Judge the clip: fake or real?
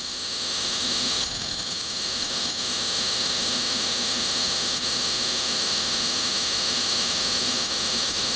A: fake